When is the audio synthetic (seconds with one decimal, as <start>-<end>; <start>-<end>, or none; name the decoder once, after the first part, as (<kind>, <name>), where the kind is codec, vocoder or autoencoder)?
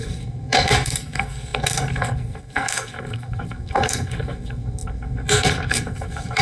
0.0-6.4 (codec, SNAC)